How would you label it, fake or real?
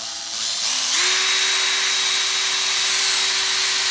real